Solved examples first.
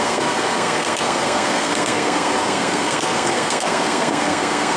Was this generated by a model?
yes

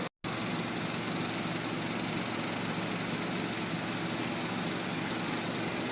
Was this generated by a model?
no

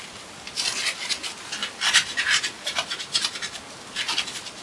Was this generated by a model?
no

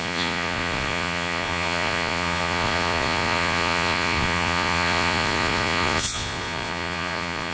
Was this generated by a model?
yes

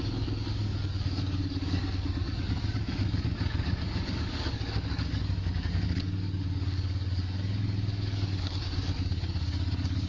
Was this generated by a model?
yes